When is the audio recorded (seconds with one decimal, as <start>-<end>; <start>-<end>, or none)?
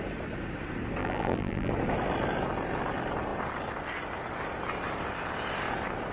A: 0.0-1.0; 1.7-6.1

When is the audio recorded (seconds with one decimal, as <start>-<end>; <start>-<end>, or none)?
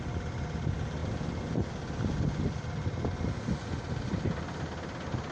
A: 0.0-5.3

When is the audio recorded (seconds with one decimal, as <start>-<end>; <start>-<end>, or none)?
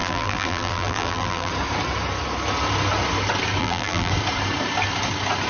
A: 1.5-3.6; 4.1-5.5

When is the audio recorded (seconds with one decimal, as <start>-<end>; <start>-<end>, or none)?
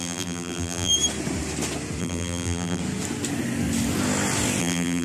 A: 0.9-2.0; 2.8-4.6